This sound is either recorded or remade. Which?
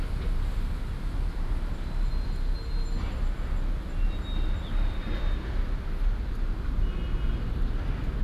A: recorded